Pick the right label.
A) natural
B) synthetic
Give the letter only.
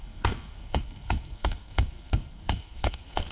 B